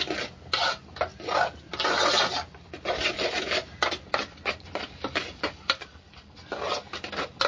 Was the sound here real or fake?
real